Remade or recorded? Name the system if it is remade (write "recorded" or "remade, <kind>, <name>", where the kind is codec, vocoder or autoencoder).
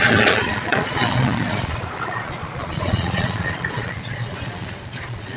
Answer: remade, vocoder, Vocos